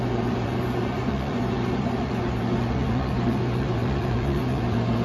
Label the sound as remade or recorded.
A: remade